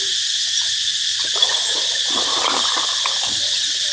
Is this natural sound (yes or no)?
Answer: yes